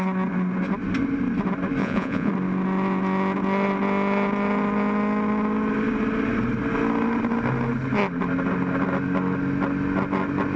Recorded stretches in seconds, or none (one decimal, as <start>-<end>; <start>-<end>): 0.0-1.8; 2.3-10.6